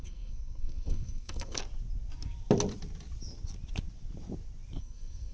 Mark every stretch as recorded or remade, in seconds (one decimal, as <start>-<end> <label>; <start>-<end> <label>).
0.0-1.6 remade; 1.6-4.8 recorded; 4.8-5.3 remade